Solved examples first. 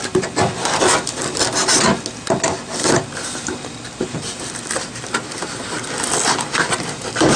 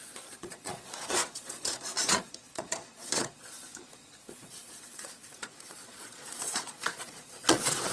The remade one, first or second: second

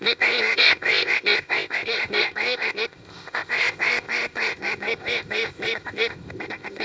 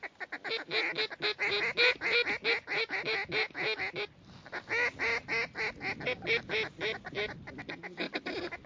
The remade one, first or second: first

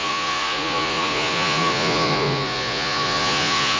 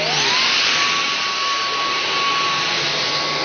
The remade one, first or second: first